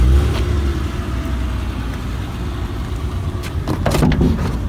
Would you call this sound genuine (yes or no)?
yes